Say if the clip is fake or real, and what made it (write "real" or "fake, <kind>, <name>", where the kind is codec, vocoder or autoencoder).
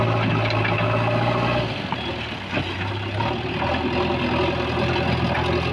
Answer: real